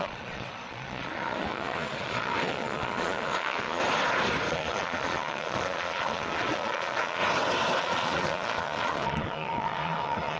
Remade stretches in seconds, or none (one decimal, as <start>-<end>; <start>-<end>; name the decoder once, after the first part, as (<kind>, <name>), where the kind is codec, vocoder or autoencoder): 0.0-3.8 (vocoder, Vocos); 4.5-7.2; 7.8-10.4